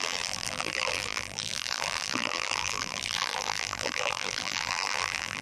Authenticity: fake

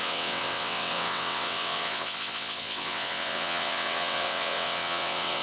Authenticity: fake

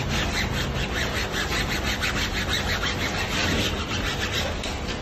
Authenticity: real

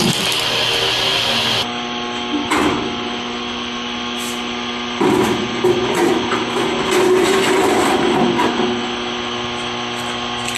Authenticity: real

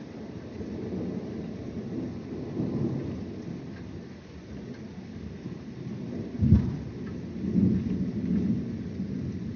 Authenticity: real